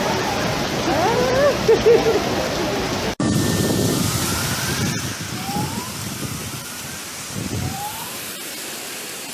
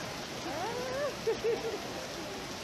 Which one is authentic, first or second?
second